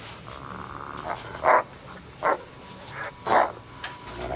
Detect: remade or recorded recorded